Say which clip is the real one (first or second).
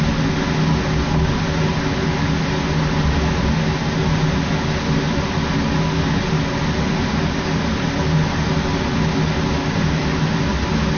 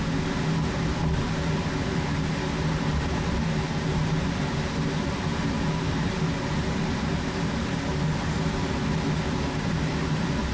first